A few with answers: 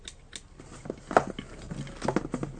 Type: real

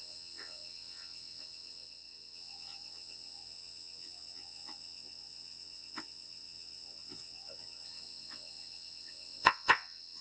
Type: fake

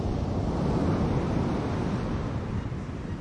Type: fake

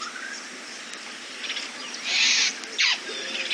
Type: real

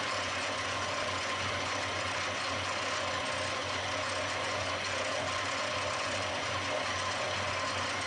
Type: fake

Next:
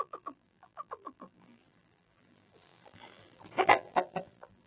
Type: fake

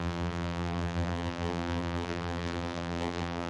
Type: fake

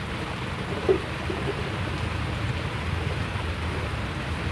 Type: real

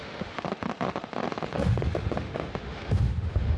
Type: fake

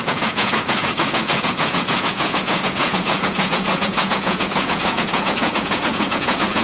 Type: fake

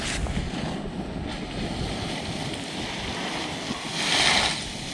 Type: real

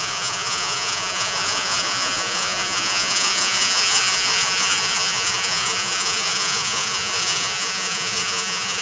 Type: fake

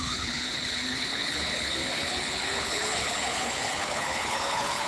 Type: fake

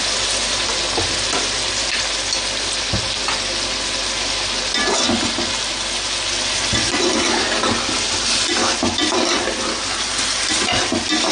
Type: real